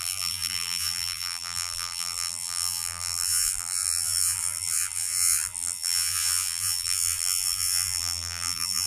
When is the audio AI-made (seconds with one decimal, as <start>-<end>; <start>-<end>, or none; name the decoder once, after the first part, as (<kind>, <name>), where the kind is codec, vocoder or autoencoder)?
0.0-8.9 (vocoder, BigVGAN v2)